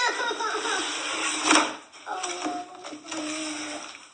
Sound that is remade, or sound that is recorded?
recorded